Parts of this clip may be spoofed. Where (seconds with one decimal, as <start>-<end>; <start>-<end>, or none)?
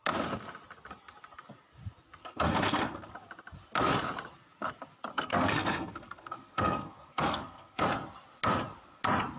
2.2-3.1; 5.1-7.8